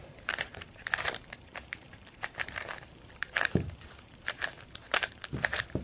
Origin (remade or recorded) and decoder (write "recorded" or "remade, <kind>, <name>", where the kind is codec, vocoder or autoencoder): remade, vocoder, BigVGAN v2